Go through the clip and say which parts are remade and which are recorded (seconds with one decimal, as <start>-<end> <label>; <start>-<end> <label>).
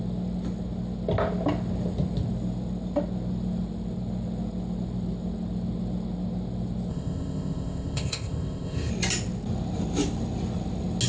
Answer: 0.0-6.9 recorded; 6.9-8.9 remade; 8.9-11.1 recorded